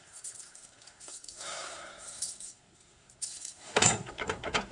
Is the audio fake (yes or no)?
yes